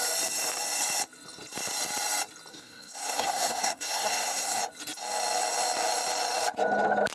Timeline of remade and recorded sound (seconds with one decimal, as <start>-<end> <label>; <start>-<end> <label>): 0.0-2.5 recorded; 2.5-4.6 remade; 4.6-7.1 recorded